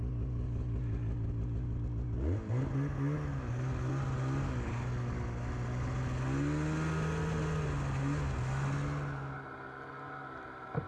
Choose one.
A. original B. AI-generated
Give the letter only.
A